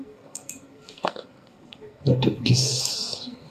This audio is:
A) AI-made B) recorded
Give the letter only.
A